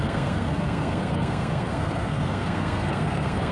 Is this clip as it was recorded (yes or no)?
no